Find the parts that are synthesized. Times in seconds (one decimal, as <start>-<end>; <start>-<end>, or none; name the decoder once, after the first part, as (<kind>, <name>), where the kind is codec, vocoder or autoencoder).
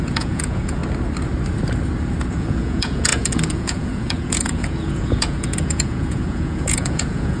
0.0-0.8 (vocoder, Vocos); 2.3-7.4